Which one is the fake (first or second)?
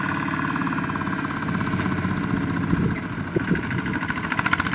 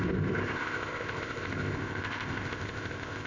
second